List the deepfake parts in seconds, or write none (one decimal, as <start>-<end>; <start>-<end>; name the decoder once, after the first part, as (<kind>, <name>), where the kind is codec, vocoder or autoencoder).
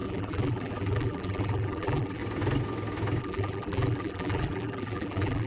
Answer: 0.0-2.2 (vocoder, BigVGAN v2); 3.2-5.5